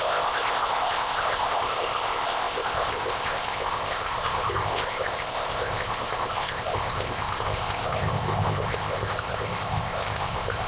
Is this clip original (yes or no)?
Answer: no